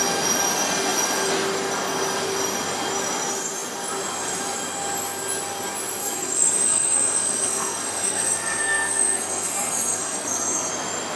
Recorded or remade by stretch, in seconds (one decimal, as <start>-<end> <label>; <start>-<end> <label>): 0.0-6.0 recorded; 6.0-10.7 remade; 10.7-11.2 recorded